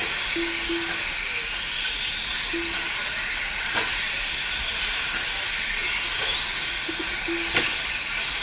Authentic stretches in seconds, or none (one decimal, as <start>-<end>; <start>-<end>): 0.0-8.4